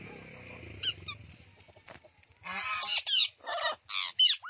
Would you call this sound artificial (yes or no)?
no